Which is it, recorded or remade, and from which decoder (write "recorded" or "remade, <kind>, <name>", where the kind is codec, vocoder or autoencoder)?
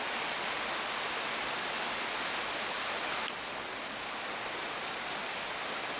recorded